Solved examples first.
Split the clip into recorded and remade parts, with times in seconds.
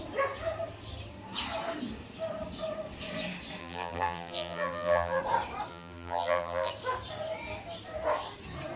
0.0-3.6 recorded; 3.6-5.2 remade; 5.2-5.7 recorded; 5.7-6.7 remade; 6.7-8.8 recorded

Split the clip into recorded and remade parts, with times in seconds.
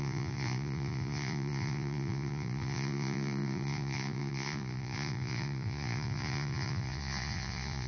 0.0-7.9 remade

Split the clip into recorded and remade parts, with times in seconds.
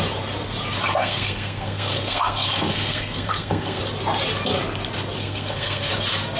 0.0-1.0 recorded; 1.0-3.8 remade; 3.8-5.2 recorded; 5.2-5.9 remade; 5.9-6.4 recorded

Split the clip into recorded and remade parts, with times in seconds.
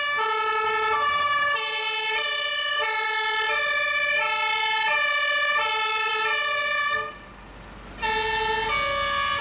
0.0-1.3 recorded; 1.3-6.1 remade; 6.1-9.4 recorded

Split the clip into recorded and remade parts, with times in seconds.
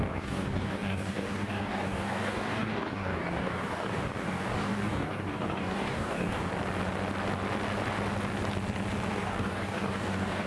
0.0-6.5 remade; 6.5-9.1 recorded; 9.1-10.5 remade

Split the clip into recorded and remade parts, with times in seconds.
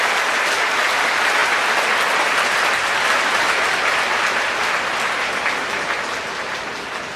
0.0-7.2 recorded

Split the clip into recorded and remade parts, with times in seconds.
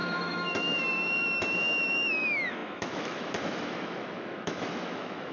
0.0-5.3 remade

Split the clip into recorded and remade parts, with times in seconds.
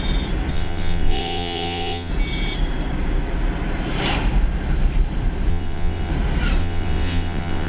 0.0-0.5 recorded; 0.5-2.1 remade; 2.1-5.5 recorded; 5.5-6.1 remade; 6.1-6.6 recorded; 6.6-7.7 remade